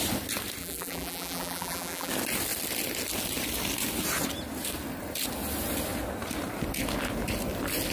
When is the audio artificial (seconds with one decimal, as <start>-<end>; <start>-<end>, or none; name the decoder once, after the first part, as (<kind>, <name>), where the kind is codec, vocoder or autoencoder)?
0.6-2.1 (vocoder, BigVGAN v2)